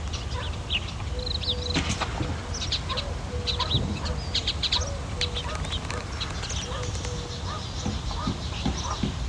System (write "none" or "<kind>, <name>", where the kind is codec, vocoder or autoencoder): none